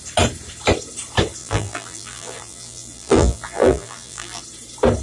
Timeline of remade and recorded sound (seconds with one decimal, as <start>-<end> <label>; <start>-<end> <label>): 0.0-1.4 recorded; 1.4-4.4 remade; 4.4-5.0 recorded